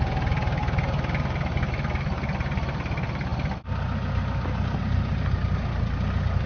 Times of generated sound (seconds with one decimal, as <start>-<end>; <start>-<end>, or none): none